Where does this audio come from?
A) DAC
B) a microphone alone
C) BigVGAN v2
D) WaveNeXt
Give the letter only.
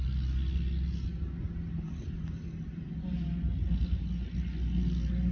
B